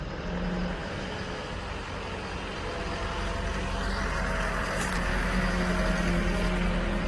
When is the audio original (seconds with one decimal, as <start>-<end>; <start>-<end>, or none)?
0.0-0.8; 1.5-5.1; 5.6-7.1